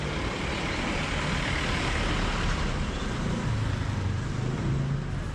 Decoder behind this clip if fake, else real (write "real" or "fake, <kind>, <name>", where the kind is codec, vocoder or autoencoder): real